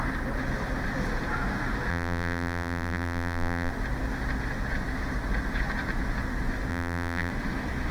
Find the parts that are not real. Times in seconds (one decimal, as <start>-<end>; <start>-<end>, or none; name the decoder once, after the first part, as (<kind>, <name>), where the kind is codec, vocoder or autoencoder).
1.9-3.7 (vocoder, BigVGAN v2); 6.7-7.3